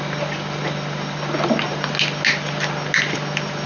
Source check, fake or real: real